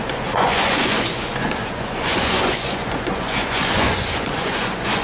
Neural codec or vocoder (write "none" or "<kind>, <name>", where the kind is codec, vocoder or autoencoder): vocoder, Vocos